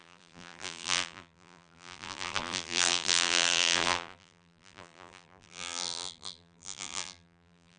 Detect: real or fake fake